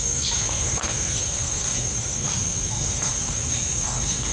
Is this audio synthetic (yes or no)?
yes